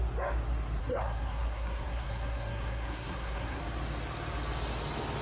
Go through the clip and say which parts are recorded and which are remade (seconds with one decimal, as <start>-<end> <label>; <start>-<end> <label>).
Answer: 0.0-0.8 recorded; 0.8-3.6 remade; 3.6-5.2 recorded